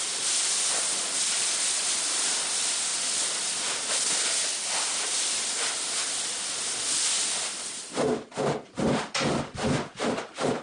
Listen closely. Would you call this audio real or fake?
real